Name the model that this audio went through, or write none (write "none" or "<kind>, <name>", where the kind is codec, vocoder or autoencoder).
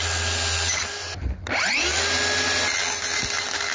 none